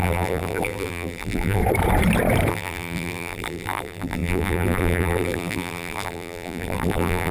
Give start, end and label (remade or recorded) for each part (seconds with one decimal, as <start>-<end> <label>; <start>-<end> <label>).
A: 0.0-1.6 remade; 1.6-2.5 recorded; 2.5-7.3 remade